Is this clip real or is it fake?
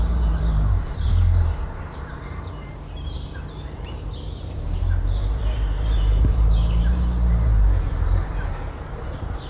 fake